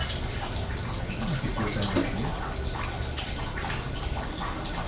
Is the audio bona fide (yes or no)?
yes